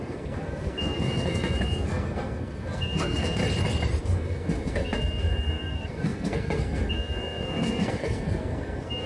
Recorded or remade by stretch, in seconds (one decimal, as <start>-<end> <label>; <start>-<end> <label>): 0.0-3.4 remade; 3.4-4.0 recorded; 4.0-9.1 remade